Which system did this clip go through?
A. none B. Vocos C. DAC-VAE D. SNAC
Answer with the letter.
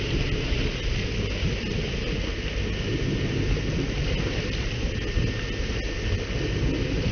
A